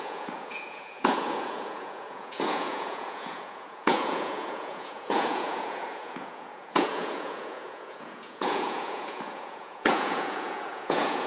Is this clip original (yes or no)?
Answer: no